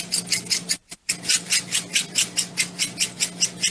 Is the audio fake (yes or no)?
no